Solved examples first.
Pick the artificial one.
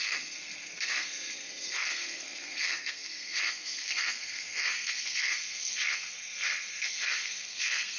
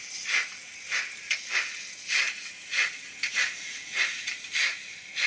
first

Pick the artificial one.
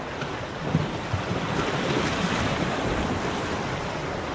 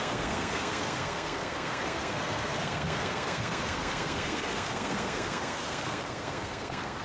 second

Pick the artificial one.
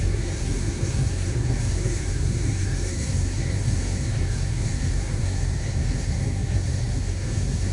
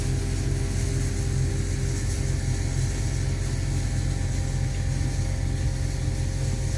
first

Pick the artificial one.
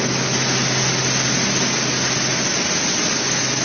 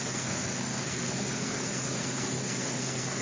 second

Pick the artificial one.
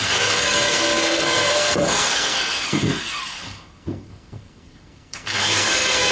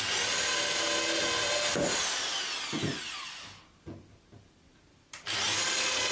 first